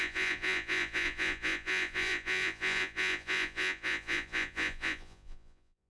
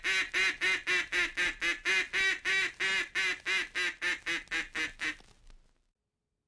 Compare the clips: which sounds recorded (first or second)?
second